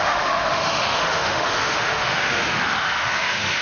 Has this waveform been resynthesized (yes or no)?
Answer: yes